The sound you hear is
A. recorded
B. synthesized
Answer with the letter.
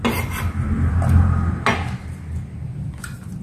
A